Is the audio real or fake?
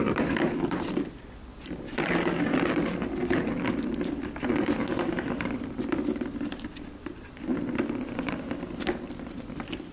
fake